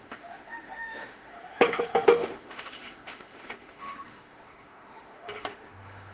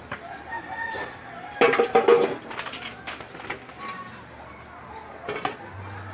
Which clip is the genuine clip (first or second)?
second